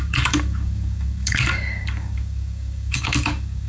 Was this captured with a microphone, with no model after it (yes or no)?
no